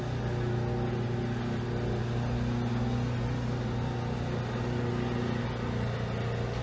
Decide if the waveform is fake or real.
real